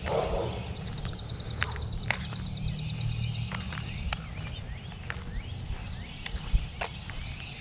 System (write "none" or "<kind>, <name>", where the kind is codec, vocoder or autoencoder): none